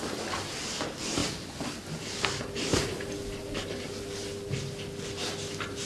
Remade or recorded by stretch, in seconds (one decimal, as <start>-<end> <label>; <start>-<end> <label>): 0.0-5.9 recorded